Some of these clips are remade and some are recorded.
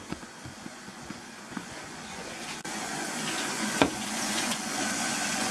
remade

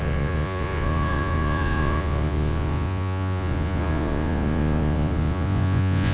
remade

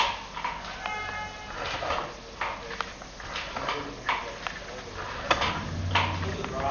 recorded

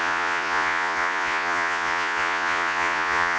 remade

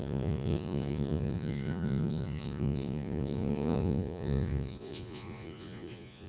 remade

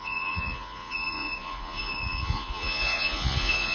remade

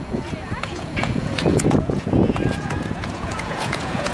remade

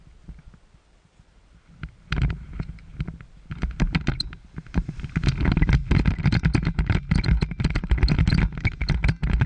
recorded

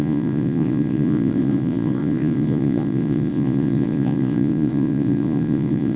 remade